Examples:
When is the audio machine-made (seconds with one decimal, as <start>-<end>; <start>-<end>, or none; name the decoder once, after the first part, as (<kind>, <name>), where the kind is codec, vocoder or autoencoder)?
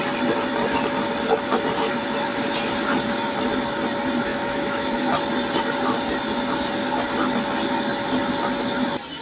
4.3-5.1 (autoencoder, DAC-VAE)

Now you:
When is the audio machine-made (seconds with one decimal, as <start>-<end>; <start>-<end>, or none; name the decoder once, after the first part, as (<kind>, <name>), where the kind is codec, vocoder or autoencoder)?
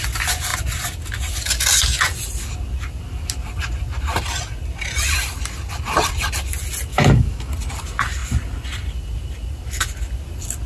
6.9-7.5 (autoencoder, DAC-VAE)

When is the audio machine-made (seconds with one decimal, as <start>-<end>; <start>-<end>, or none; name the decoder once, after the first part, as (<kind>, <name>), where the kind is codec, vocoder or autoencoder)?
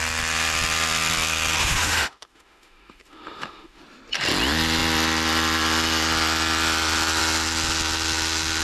1.6-3.8 (autoencoder, DAC-VAE)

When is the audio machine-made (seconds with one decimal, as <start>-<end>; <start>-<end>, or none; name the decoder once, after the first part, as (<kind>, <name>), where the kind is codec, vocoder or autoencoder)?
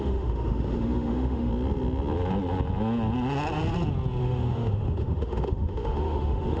0.0-1.5 (autoencoder, DAC-VAE); 4.2-6.6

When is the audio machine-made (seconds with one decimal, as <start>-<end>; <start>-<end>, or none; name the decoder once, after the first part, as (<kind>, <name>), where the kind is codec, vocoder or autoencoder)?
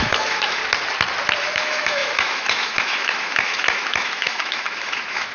0.0-0.6 (autoencoder, DAC-VAE); 1.4-5.3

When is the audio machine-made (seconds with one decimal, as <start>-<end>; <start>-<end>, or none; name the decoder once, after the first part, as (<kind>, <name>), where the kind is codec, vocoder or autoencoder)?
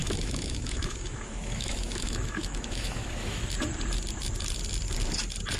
0.0-3.4 (autoencoder, DAC-VAE)